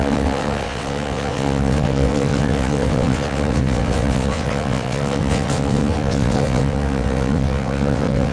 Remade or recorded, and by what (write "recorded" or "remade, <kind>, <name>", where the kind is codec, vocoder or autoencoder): remade, vocoder, WaveNeXt